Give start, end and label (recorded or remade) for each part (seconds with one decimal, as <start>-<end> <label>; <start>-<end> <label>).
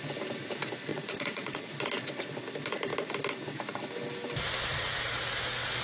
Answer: 0.0-0.9 recorded; 0.9-1.7 remade; 1.7-5.8 recorded